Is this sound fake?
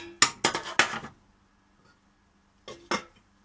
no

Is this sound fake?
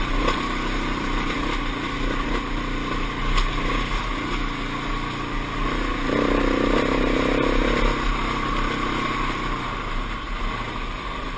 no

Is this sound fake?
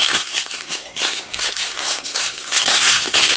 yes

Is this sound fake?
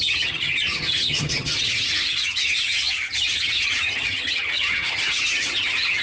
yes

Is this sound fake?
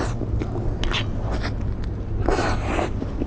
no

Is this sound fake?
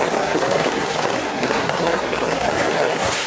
yes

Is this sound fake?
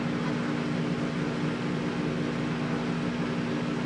no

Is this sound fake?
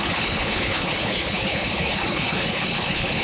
yes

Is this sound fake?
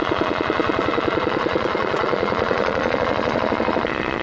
yes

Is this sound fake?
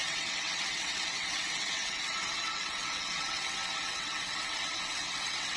yes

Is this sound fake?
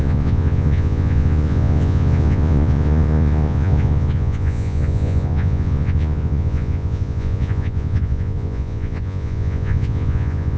yes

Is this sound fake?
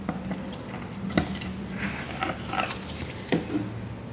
no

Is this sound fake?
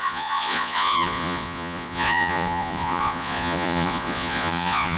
yes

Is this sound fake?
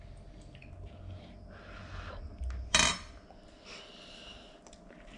no